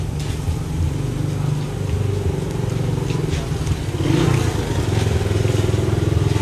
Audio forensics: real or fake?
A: real